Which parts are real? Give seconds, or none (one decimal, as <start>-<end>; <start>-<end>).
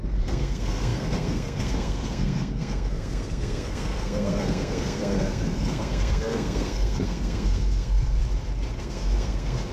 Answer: 8.2-8.8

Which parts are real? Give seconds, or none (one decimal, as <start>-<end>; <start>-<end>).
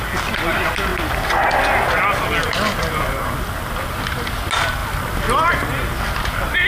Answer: 0.0-6.7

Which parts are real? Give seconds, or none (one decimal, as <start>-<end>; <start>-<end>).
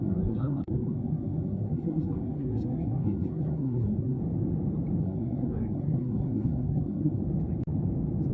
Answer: 4.2-5.0; 7.2-8.3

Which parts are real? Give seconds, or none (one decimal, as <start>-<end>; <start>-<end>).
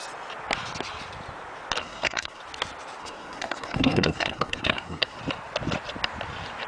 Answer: 0.0-1.8; 2.4-3.0; 5.2-6.7